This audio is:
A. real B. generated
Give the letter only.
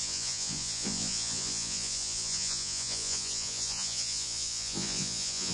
B